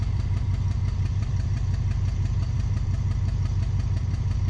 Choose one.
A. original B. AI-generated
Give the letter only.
B